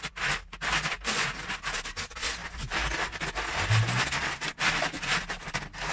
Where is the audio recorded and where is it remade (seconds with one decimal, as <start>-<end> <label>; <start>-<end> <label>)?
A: 0.0-5.9 recorded